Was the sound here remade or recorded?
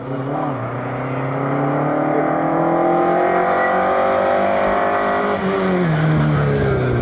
recorded